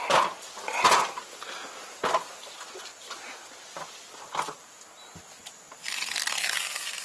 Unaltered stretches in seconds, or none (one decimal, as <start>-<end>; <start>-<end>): 0.0-7.0